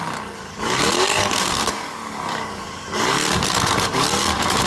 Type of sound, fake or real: fake